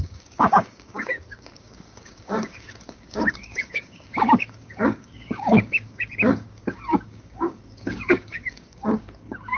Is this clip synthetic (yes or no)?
yes